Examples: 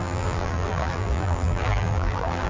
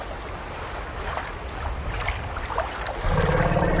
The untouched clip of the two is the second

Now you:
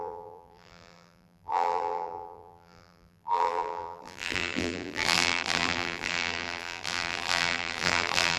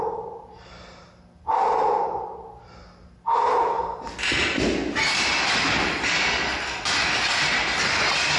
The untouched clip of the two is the second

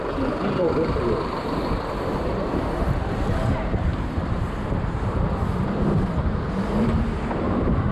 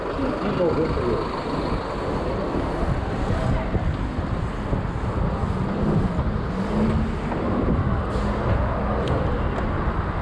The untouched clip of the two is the second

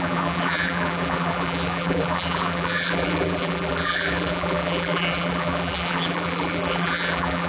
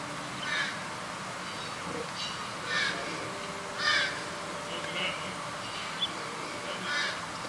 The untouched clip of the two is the second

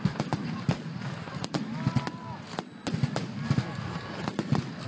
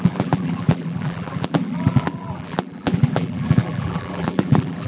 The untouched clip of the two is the first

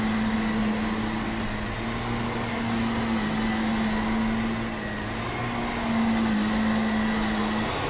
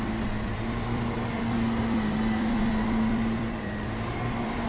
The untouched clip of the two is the first